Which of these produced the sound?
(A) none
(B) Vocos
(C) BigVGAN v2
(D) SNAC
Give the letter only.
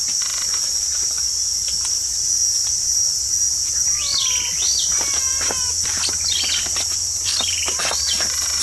A